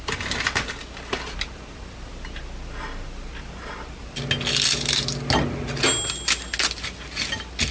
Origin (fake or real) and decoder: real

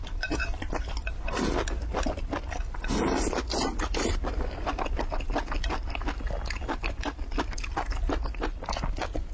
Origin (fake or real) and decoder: real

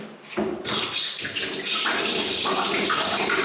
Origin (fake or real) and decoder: real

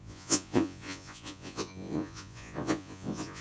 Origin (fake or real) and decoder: fake, vocoder, Vocos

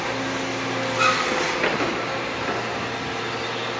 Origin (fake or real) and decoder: real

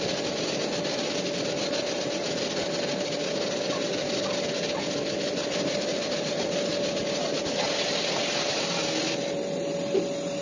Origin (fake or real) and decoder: real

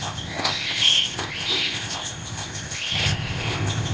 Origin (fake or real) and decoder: fake, codec, ZipCodec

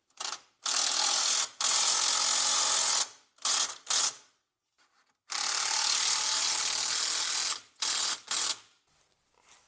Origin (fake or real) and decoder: real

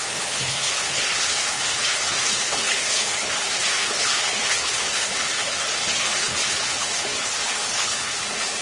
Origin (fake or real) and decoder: fake, codec, HILCodec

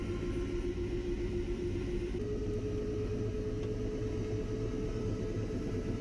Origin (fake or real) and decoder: real